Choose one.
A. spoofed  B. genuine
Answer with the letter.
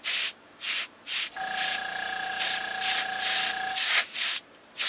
B